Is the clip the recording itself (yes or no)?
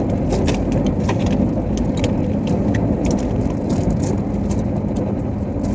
yes